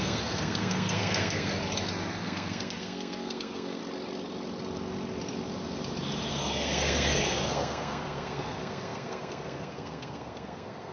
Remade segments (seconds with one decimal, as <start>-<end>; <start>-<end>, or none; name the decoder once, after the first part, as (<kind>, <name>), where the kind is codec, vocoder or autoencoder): 0.0-1.5 (codec, SNAC); 2.2-3.8; 6.3-10.9